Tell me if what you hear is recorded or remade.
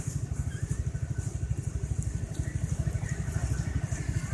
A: recorded